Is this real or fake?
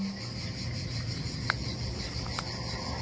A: real